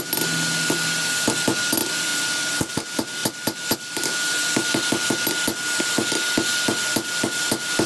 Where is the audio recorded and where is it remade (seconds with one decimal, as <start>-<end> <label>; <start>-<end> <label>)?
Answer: 0.0-7.9 recorded